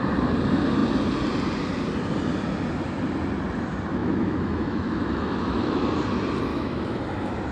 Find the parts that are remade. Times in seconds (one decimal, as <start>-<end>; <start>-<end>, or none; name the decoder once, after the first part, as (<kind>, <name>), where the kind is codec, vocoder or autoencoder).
4.0-5.8 (autoencoder, DAC-VAE); 6.5-7.0